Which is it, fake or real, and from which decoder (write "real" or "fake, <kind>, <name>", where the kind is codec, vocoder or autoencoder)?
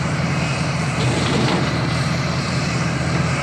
fake, vocoder, BigVGAN v2